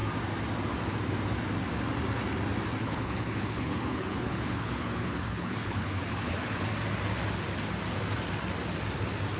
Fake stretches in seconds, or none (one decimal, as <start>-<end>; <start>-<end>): 2.8-6.7